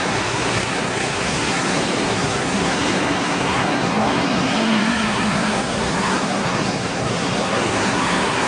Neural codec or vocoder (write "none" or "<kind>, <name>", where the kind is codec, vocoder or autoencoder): codec, SNAC